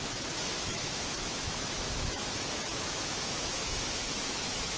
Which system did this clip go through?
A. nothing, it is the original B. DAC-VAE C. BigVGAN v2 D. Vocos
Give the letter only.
B